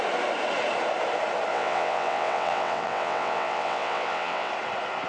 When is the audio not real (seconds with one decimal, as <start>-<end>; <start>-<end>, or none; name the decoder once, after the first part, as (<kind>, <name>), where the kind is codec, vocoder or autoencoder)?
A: 1.5-4.5 (vocoder, WaveNeXt)